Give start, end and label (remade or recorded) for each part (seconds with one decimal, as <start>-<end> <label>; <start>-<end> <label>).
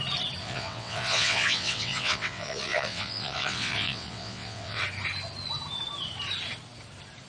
0.0-0.4 recorded; 0.4-4.8 remade; 4.8-7.3 recorded